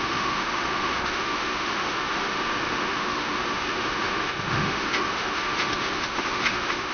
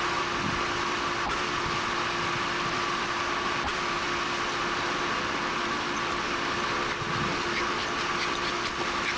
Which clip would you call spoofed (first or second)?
first